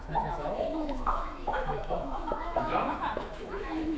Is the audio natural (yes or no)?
no